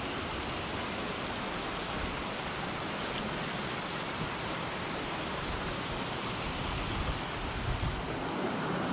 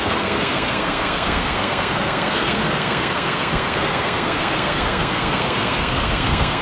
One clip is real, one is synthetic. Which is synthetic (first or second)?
second